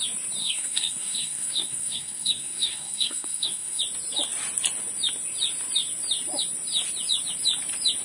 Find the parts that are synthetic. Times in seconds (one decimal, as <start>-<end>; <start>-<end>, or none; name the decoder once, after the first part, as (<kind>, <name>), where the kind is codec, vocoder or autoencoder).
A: 0.4-3.8 (codec, SNAC)